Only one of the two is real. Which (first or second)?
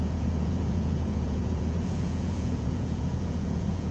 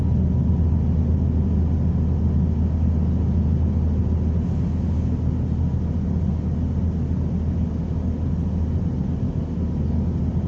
second